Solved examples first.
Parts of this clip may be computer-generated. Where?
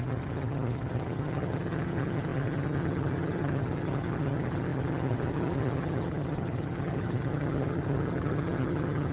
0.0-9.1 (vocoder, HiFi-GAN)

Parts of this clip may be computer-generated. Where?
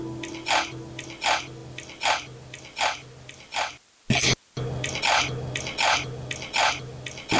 none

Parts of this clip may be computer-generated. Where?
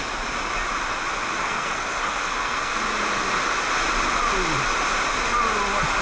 1.4-2.8 (codec, SNAC)